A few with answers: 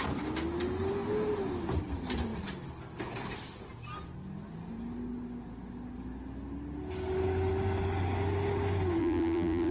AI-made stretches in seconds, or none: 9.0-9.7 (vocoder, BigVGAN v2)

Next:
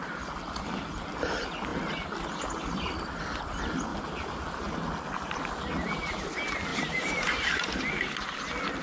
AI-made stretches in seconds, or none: 6.7-7.7 (vocoder, BigVGAN v2)

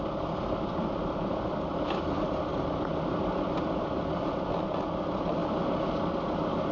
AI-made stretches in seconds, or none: none